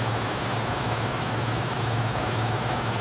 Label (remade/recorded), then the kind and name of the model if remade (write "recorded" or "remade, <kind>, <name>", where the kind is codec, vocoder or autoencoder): remade, autoencoder, DAC-VAE